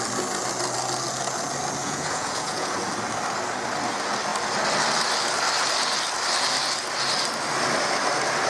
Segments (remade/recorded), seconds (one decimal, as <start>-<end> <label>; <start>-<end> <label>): 0.0-1.8 recorded; 1.8-2.8 remade; 2.8-8.5 recorded